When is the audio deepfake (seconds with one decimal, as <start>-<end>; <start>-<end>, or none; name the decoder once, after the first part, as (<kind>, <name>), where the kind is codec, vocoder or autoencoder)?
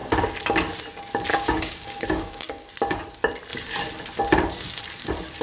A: 1.3-2.7 (codec, DAC)